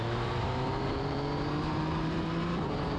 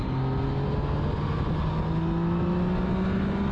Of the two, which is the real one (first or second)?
second